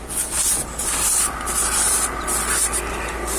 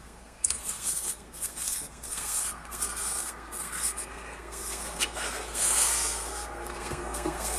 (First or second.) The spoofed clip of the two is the second